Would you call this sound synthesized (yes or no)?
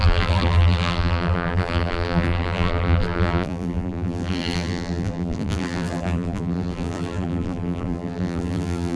yes